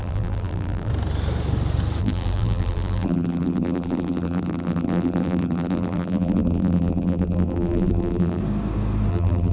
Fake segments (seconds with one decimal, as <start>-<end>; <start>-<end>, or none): 0.0-0.9; 2.0-8.4; 9.1-9.5